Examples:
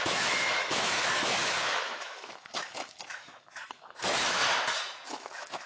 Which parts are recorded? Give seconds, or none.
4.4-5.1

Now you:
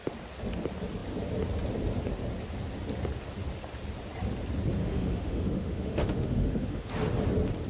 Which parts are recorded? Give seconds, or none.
0.0-4.8; 6.9-7.7